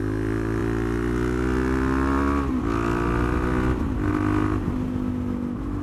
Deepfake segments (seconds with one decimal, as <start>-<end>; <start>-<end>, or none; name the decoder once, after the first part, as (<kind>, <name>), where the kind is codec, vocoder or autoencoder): none